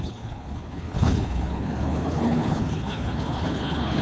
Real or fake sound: fake